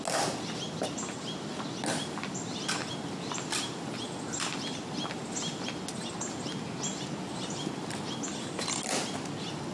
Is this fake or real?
real